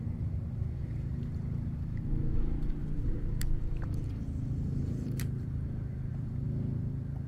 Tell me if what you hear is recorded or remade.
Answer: remade